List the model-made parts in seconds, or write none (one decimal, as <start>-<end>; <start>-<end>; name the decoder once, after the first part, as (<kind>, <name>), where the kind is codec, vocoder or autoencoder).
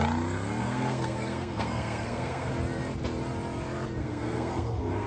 0.6-2.5 (codec, SNAC); 4.0-5.1